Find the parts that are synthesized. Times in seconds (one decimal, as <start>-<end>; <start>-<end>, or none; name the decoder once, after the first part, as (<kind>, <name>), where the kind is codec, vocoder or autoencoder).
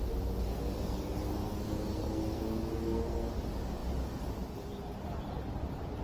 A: 0.5-3.3 (codec, SNAC)